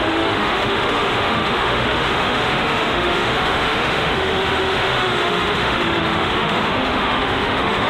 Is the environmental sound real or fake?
fake